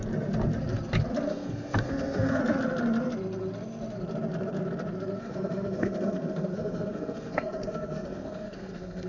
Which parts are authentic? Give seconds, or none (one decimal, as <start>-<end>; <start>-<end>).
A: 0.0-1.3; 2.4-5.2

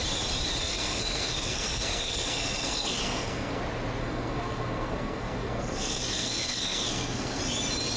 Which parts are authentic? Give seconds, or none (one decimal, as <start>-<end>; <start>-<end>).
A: 0.0-0.6; 3.6-4.0; 7.4-8.0

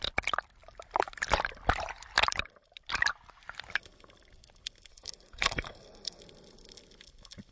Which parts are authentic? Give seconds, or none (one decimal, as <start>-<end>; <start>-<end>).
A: 0.0-4.9; 6.2-7.5